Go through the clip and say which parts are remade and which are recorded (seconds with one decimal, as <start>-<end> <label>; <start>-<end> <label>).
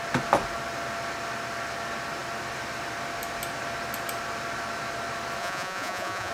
0.0-5.4 recorded; 5.4-6.3 remade